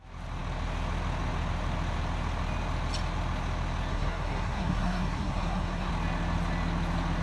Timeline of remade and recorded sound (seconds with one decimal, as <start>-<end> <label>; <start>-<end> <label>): 0.0-3.9 recorded; 3.9-5.9 remade; 5.9-7.2 recorded